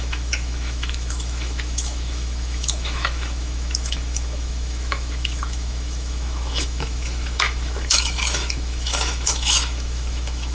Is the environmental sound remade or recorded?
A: remade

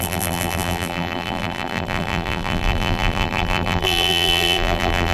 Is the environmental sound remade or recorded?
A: remade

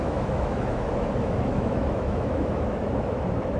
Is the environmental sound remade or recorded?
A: remade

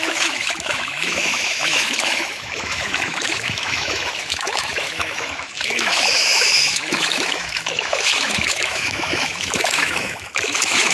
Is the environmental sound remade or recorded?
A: remade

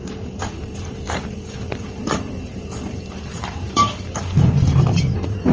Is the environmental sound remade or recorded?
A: remade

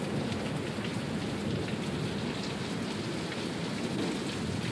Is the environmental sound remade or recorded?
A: recorded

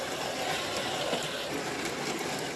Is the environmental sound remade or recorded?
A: recorded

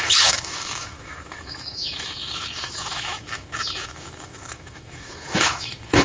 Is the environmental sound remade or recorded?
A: remade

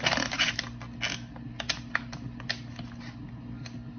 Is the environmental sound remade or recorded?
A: recorded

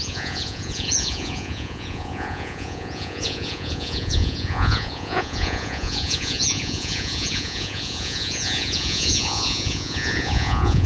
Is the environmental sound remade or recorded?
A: remade